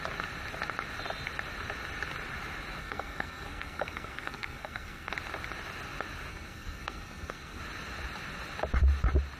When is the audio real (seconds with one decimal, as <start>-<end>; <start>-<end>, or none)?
0.0-2.8; 5.1-6.3; 7.6-9.4